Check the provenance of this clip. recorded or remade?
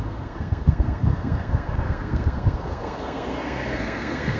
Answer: remade